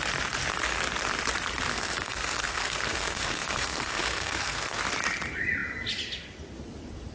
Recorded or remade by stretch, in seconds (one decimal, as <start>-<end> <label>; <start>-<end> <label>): 0.0-1.7 recorded; 1.7-4.8 remade; 4.8-7.1 recorded